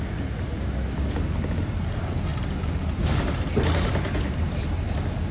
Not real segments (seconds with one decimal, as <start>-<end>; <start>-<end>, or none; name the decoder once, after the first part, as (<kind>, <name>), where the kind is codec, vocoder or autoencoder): none

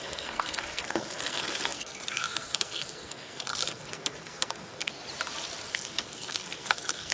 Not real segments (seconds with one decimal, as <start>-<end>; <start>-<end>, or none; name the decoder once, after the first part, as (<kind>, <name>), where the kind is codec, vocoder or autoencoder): 0.0-5.0 (codec, SNAC); 5.7-7.1